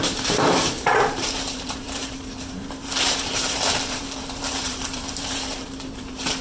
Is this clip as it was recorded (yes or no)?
no